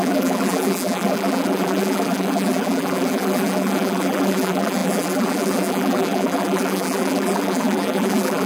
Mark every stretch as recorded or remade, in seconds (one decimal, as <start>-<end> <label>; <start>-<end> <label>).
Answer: 0.0-8.5 remade